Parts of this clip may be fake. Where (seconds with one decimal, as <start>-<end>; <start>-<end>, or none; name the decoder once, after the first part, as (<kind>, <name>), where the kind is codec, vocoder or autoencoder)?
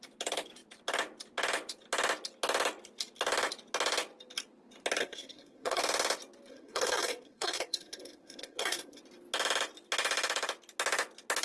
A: 5.0-5.8 (codec, SNAC); 6.5-9.0